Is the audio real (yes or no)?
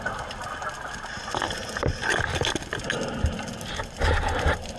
yes